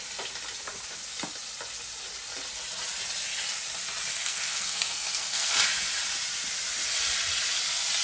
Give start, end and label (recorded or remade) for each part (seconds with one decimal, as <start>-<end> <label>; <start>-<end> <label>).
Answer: 0.0-4.1 recorded; 4.1-5.5 remade; 5.5-8.0 recorded